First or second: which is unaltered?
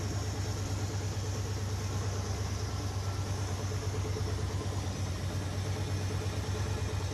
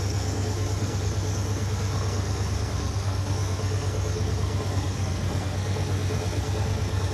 first